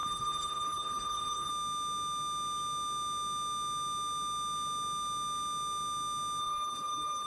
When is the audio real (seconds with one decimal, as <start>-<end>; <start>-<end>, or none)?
1.5-6.4